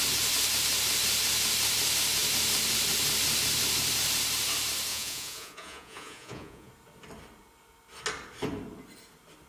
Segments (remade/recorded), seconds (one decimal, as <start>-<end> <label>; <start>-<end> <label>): 0.0-4.9 recorded; 4.9-6.7 remade; 6.7-9.5 recorded